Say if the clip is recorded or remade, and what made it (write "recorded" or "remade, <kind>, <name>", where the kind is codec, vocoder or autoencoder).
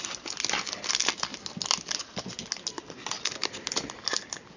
recorded